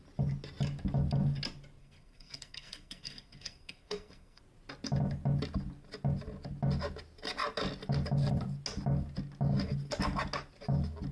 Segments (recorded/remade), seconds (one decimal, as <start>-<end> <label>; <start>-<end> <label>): 0.0-1.8 recorded; 1.8-4.4 remade; 4.4-11.1 recorded